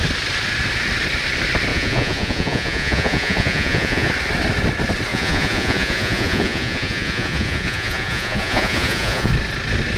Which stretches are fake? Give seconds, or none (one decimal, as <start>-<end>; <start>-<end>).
1.7-4.1; 5.1-9.3